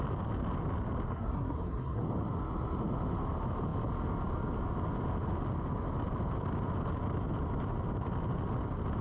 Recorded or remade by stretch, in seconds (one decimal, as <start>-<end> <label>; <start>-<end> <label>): 0.0-1.1 recorded; 1.1-2.0 remade; 2.0-9.0 recorded